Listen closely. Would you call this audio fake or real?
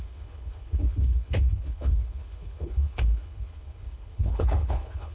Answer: fake